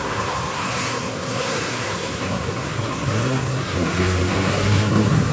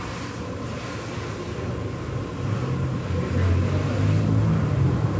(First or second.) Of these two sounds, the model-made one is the first